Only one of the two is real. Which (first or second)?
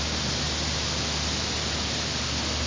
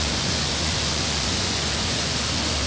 first